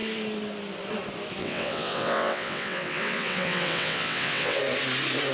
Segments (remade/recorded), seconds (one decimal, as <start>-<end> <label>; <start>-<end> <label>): 0.0-1.4 recorded; 1.4-4.6 remade; 4.6-5.3 recorded